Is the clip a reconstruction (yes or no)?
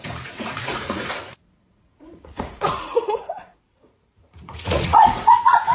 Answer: yes